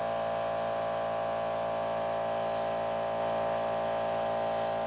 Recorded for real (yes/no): yes